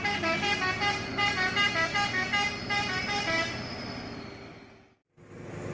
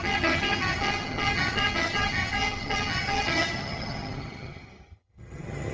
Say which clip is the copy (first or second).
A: second